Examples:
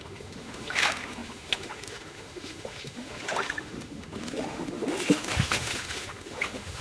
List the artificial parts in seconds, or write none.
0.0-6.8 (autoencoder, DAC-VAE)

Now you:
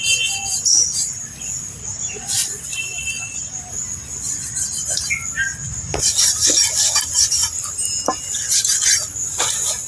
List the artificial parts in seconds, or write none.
none

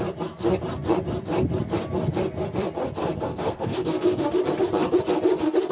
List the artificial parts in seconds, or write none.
3.0-4.2 (codec, SNAC)